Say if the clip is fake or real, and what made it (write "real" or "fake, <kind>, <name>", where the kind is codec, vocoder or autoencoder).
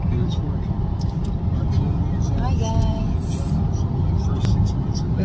real